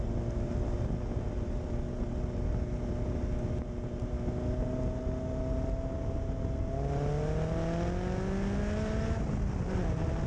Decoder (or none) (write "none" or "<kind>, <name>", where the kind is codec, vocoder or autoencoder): none